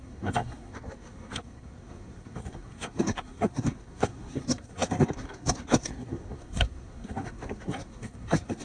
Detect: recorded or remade remade